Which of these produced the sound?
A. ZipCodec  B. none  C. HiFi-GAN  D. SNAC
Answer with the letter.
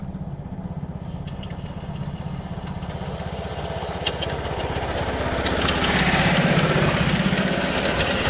B